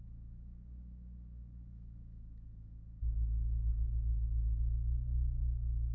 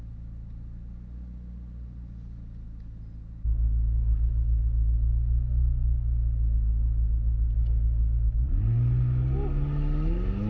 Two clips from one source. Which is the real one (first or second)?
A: second